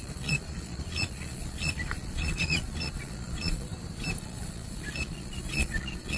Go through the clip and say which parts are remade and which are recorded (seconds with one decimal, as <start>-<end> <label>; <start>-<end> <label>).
0.0-3.7 remade; 3.7-4.2 recorded; 4.2-6.2 remade